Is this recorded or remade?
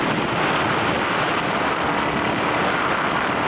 recorded